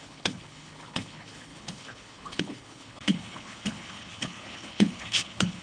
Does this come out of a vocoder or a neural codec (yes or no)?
yes